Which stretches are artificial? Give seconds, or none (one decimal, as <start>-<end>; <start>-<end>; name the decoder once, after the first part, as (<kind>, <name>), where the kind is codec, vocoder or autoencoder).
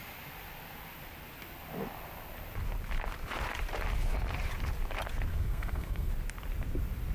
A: 5.3-6.1 (codec, SNAC)